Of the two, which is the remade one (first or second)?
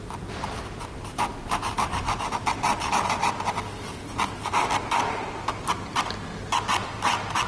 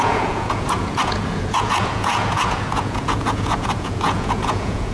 second